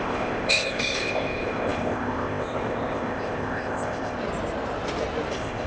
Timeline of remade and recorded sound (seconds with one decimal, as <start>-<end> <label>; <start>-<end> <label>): 0.0-4.2 remade; 4.2-5.3 recorded; 5.3-5.7 remade